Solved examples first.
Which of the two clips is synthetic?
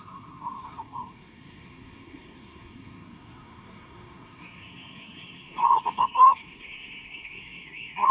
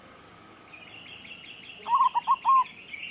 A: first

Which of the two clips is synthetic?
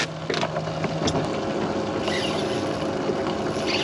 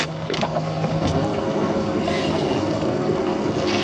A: second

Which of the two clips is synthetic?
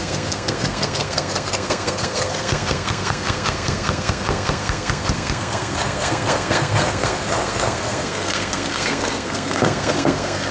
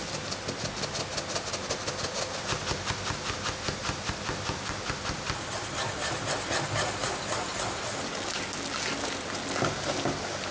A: first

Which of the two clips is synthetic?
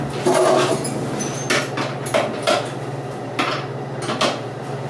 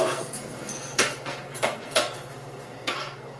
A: second